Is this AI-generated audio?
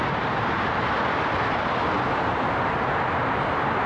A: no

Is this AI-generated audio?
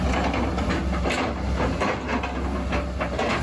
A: no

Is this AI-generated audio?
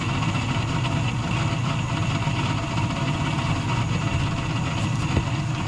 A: no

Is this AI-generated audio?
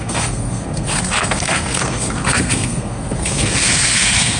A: yes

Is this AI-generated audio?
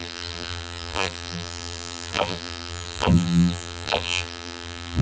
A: yes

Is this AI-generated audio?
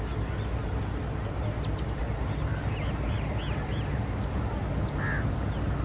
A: no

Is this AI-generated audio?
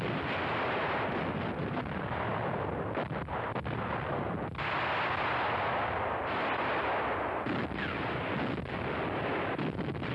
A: no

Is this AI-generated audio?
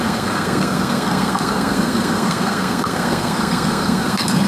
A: yes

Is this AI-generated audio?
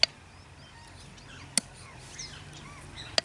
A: no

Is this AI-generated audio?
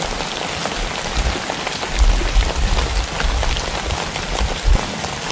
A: no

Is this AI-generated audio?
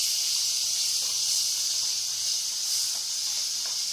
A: no